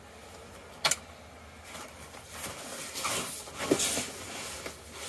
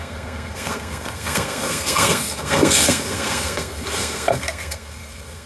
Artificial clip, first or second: second